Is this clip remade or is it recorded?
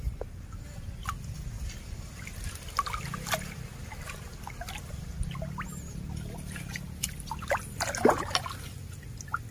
recorded